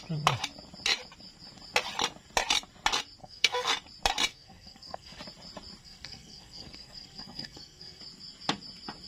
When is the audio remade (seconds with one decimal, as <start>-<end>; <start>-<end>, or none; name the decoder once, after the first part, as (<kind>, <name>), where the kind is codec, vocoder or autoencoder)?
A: 3.2-3.7 (codec, SNAC); 4.3-5.2; 5.8-8.0